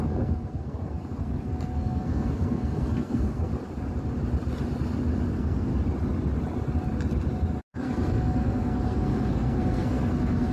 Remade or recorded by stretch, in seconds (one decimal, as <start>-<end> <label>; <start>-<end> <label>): 0.0-3.5 remade; 3.5-5.3 recorded; 5.3-5.7 remade; 5.7-7.6 recorded; 7.6-10.5 remade